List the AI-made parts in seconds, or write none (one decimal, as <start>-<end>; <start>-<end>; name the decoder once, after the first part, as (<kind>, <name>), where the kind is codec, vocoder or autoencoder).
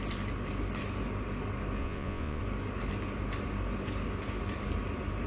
1.8-2.4 (vocoder, Vocos)